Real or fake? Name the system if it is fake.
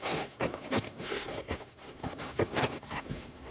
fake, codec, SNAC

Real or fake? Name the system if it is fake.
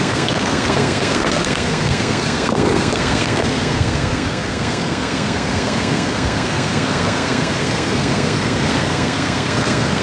fake, codec, SNAC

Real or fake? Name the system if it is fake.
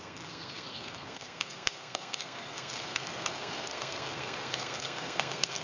fake, codec, SNAC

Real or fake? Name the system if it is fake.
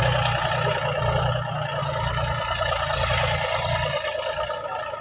real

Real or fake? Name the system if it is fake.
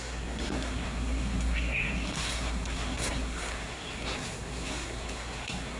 fake, codec, SNAC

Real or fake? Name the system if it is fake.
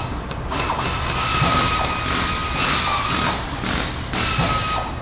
real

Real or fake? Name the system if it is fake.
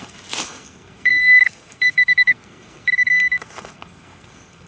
fake, codec, SNAC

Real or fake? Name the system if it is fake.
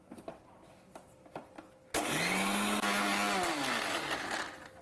real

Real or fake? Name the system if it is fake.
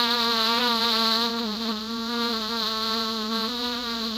real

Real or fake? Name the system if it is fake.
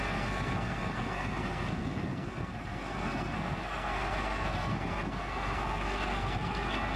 fake, codec, SNAC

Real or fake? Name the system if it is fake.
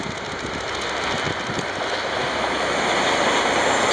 real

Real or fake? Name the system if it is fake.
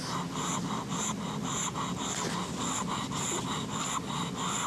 real